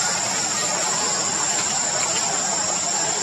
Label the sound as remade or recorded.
recorded